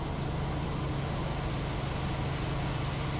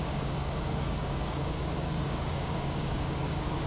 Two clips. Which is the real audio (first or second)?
first